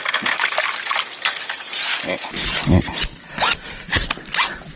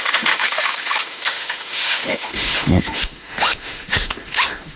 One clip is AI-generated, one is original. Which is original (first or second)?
first